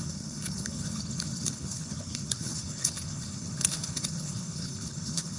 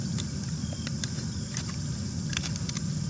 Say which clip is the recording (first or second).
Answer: second